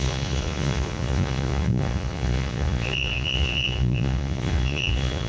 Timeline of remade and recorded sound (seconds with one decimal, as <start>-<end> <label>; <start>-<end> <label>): 0.0-5.3 remade